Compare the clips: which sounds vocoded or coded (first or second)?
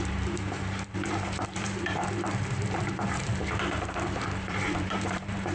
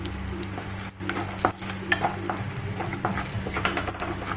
first